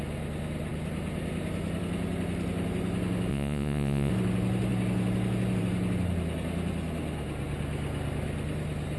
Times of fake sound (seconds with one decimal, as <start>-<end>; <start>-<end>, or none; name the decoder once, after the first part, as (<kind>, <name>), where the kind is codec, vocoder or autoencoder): 3.3-4.1 (vocoder, Vocos)